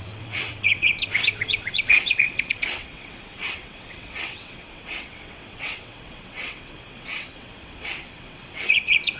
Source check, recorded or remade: remade